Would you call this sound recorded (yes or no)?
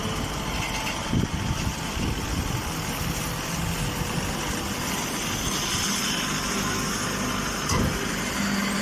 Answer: yes